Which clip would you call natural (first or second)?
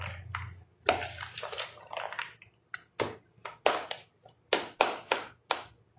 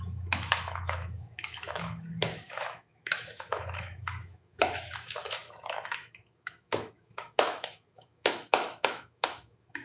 first